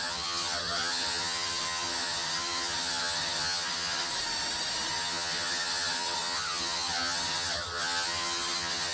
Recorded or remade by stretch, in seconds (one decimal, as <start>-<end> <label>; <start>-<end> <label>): 0.0-4.1 remade; 4.1-4.9 recorded; 4.9-8.9 remade